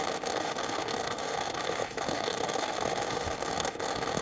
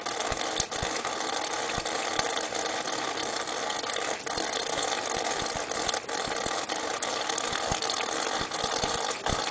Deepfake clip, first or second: first